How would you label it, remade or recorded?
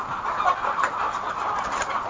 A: recorded